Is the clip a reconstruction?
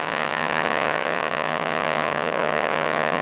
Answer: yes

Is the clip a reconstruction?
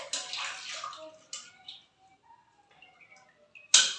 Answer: no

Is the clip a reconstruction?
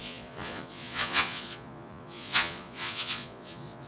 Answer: yes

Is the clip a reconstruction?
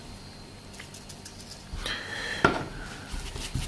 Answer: no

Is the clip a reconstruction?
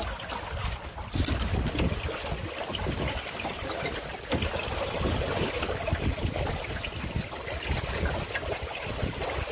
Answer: no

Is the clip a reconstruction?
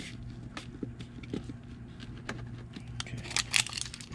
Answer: no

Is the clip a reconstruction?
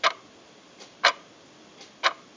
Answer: no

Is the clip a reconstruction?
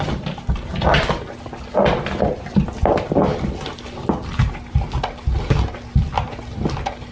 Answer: no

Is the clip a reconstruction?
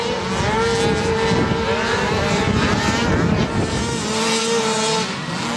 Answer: no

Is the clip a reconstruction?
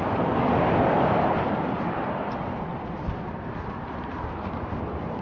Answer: no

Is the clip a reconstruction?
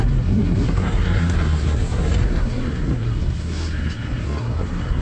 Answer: yes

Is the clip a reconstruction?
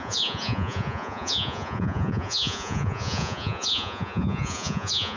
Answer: yes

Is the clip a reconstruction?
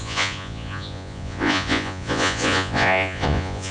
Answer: yes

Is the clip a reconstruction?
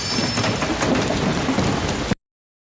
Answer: no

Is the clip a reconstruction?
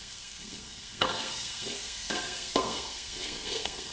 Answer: yes